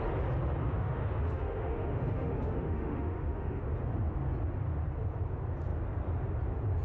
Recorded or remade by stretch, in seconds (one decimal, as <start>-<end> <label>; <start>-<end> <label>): 0.0-0.6 recorded; 0.6-3.6 remade; 3.6-6.8 recorded